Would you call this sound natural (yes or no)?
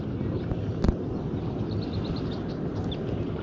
yes